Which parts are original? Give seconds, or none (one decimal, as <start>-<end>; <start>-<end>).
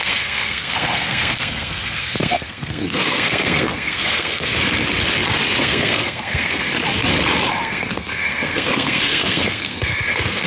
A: 4.5-5.6; 6.7-7.5